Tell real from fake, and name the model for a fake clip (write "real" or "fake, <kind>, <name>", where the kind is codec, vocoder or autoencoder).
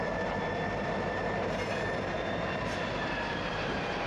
fake, vocoder, BigVGAN v2